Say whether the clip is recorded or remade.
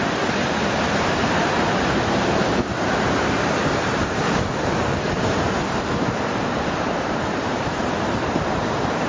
remade